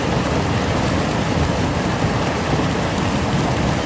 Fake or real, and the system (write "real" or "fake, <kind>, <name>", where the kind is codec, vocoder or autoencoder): real